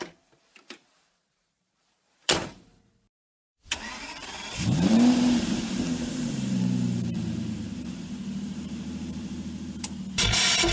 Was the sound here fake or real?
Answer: fake